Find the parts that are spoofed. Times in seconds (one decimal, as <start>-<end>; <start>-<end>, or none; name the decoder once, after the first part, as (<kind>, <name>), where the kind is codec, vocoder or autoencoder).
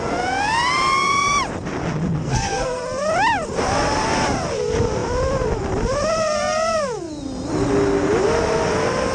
2.2-2.8 (codec, SNAC)